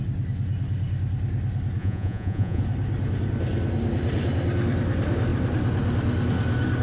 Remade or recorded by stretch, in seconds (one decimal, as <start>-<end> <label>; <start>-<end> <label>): 0.0-1.8 recorded; 1.8-2.6 remade; 2.6-6.8 recorded

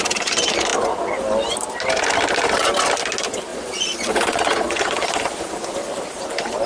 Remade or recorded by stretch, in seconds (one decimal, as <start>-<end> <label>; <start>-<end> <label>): 0.0-3.5 recorded; 3.5-4.8 remade; 4.8-6.7 recorded

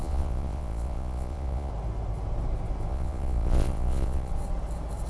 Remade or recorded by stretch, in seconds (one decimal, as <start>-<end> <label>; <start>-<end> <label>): 0.0-1.7 remade; 1.7-2.9 recorded; 2.9-4.3 remade; 4.3-5.1 recorded